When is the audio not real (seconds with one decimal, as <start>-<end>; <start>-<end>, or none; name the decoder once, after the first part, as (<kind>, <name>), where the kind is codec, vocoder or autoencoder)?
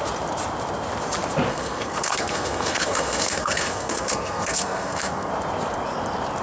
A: 1.5-5.3 (codec, SNAC)